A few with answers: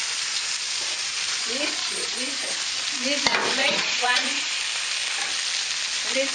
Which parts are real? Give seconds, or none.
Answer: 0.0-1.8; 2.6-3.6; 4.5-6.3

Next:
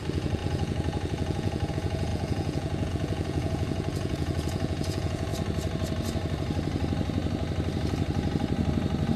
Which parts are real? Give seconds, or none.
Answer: 5.3-9.2

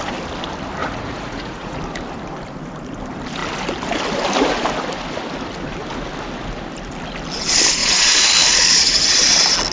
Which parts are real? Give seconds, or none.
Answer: 0.0-0.8; 1.8-7.8; 8.3-9.7

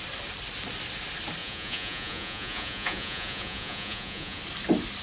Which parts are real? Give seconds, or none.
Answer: 0.0-1.4; 4.4-5.0

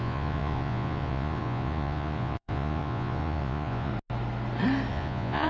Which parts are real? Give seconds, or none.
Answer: 3.9-4.9

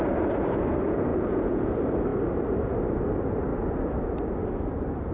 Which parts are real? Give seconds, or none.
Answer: 0.0-1.1; 1.7-5.1

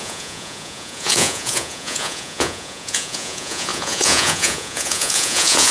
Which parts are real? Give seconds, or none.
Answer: none